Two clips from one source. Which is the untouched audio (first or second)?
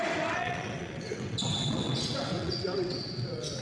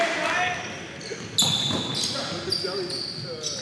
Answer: second